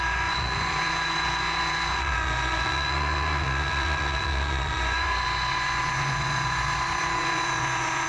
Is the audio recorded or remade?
remade